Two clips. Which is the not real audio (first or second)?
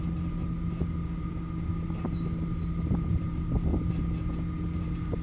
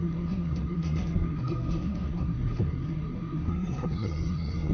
second